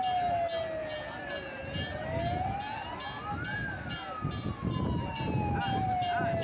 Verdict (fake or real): real